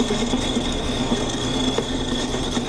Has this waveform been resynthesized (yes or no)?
yes